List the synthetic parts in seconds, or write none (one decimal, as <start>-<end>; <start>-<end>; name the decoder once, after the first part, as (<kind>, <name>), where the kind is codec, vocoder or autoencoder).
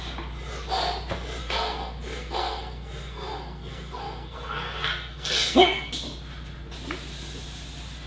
1.4-5.9 (codec, SNAC)